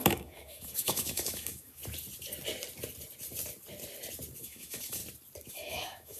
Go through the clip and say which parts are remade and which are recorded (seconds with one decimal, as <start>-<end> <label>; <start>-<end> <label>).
0.0-1.8 remade; 1.8-4.4 recorded; 4.4-5.0 remade; 5.0-5.5 recorded; 5.5-6.2 remade